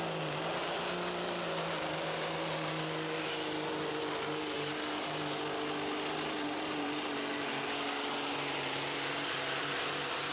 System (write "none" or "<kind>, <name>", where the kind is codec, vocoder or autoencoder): none